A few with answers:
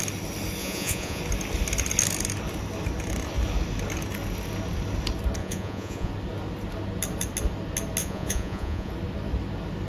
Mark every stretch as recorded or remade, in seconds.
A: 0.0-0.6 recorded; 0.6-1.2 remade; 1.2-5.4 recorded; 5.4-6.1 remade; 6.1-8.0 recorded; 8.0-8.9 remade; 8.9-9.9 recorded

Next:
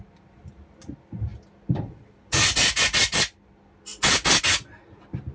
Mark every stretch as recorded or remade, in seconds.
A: 0.0-5.3 recorded